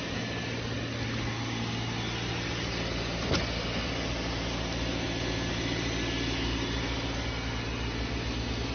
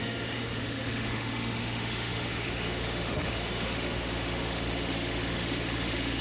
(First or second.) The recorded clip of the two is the first